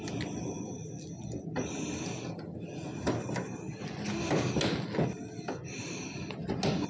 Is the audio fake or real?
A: real